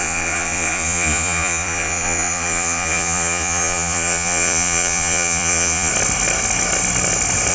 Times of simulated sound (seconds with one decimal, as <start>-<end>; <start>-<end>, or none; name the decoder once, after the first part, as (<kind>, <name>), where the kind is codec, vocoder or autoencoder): 0.0-5.9 (vocoder, Vocos)

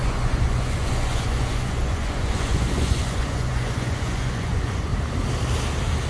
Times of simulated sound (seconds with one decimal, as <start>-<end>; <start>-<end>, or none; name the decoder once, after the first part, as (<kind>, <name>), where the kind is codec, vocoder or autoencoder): 0.0-4.9 (vocoder, Vocos)

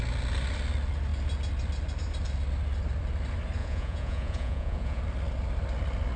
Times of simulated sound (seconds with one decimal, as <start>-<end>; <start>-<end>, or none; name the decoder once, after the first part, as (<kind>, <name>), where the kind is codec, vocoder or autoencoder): 3.6-5.0 (vocoder, Vocos)

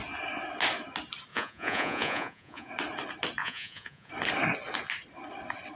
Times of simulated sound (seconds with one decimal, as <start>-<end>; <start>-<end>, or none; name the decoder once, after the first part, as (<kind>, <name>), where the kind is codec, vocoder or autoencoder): 1.3-2.7 (vocoder, Vocos); 3.4-4.1